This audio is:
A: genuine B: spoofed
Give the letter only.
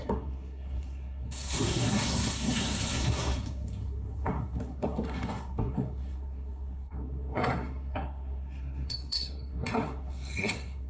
B